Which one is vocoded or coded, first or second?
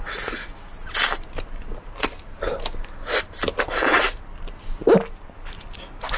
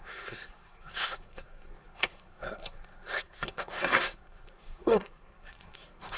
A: second